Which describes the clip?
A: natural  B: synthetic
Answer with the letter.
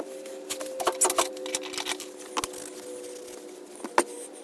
A